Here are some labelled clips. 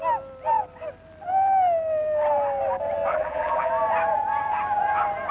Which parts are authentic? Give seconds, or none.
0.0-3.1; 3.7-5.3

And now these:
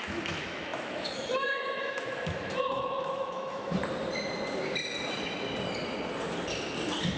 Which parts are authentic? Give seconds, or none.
3.8-7.2

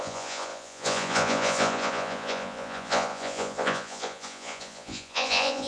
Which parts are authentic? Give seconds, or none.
none

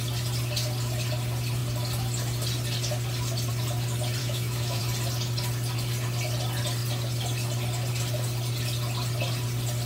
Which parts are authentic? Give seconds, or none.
0.0-4.2; 4.8-9.9

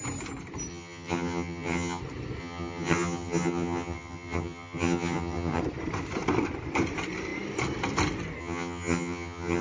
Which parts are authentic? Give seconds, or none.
0.0-0.7; 2.0-2.4; 5.6-8.4

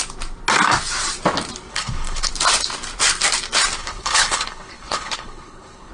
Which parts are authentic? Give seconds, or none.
0.0-1.7; 2.3-3.8